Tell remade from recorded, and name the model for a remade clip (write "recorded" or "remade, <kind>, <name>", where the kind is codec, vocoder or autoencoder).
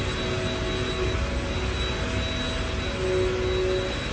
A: recorded